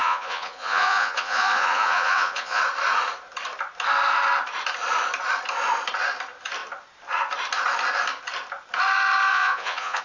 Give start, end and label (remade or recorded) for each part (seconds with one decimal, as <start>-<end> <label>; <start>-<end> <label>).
0.0-2.6 remade; 2.6-9.3 recorded; 9.3-10.0 remade